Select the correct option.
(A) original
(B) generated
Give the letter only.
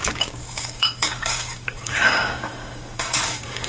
B